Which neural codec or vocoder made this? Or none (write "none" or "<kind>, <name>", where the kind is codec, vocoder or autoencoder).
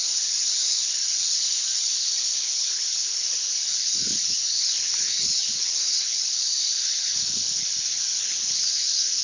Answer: codec, HILCodec